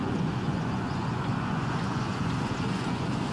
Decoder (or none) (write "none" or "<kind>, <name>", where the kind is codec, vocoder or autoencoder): vocoder, Vocos